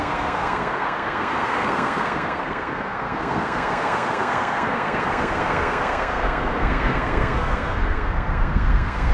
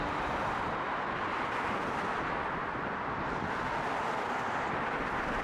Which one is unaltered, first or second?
second